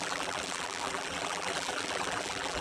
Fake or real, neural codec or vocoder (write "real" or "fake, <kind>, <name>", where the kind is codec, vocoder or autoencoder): fake, vocoder, BigVGAN v2